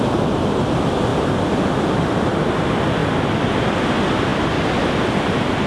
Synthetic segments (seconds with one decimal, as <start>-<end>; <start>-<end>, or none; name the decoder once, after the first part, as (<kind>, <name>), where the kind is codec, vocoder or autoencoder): 1.1-2.5 (vocoder, BigVGAN v2); 3.0-3.5